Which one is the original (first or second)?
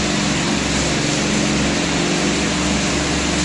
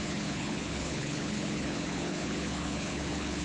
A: first